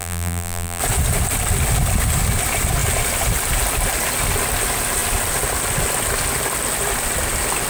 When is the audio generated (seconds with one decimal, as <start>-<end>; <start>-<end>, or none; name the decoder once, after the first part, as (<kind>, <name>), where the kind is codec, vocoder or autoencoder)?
0.0-0.8 (vocoder, BigVGAN v2)